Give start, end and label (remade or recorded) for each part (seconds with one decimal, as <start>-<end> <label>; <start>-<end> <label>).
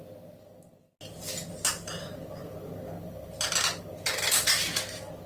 0.0-5.3 recorded